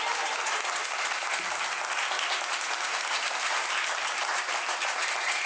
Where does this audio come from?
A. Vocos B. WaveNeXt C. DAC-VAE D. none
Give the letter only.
D